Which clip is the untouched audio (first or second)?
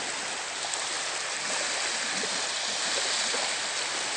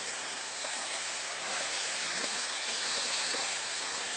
first